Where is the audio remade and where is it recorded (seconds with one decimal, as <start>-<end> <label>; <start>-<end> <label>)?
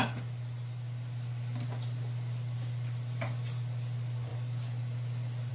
0.0-5.5 recorded